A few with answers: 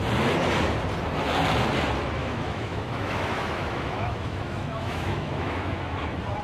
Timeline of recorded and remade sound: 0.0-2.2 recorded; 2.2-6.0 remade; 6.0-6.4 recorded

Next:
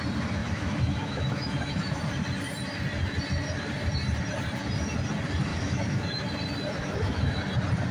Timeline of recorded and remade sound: 0.0-0.4 recorded; 0.4-2.0 remade; 2.0-5.5 recorded; 5.5-6.2 remade; 6.2-6.8 recorded; 6.8-7.4 remade; 7.4-7.9 recorded

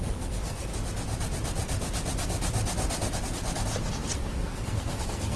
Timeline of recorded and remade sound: 0.0-0.7 remade; 0.7-3.9 recorded; 3.9-5.4 remade

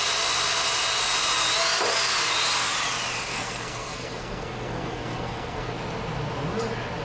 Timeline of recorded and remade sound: 0.0-3.3 recorded; 3.3-5.7 remade; 5.7-7.0 recorded

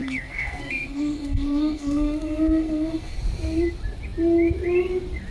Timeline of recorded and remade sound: 0.0-3.2 remade; 3.2-5.3 recorded

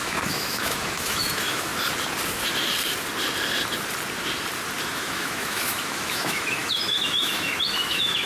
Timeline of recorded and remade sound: 0.0-1.7 remade; 1.7-4.8 recorded; 4.8-8.3 remade

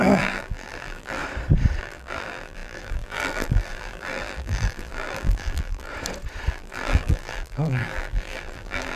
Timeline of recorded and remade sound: 0.0-1.2 remade; 1.2-1.8 recorded; 1.8-5.9 remade; 5.9-6.5 recorded; 6.5-8.9 remade

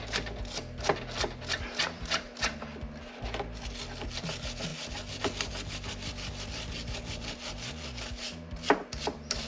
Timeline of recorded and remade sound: 0.0-9.5 recorded